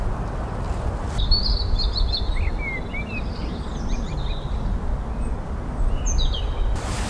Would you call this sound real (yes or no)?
yes